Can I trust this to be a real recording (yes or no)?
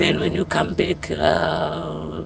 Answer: no